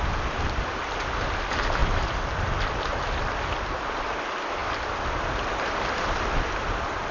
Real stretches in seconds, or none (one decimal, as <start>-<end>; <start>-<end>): 0.0-7.1